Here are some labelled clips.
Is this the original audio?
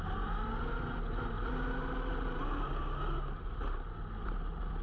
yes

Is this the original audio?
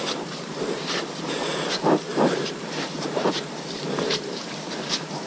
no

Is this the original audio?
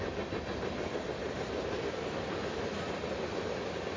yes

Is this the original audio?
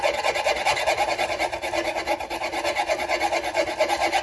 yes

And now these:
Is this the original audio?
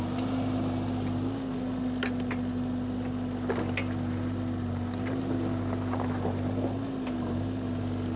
yes